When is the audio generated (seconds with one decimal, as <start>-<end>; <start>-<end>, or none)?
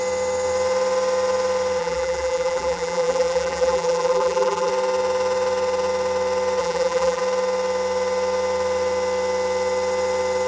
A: 1.8-4.7; 6.6-7.2